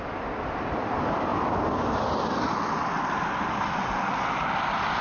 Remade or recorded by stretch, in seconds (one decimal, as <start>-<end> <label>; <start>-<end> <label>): 0.0-5.0 recorded